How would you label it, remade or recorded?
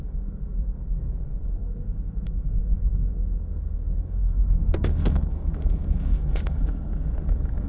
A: remade